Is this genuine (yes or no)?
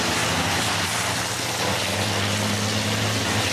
yes